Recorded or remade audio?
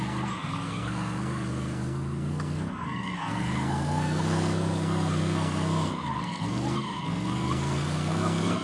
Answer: remade